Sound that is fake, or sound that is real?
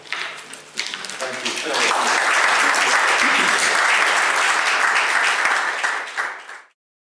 real